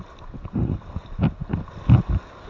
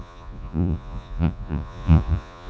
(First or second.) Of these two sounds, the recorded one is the first